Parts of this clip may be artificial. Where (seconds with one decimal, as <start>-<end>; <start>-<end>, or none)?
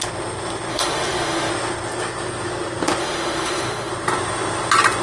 0.7-1.5; 3.0-3.9